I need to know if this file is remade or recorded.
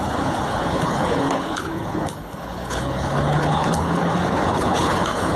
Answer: remade